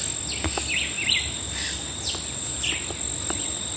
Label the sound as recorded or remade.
recorded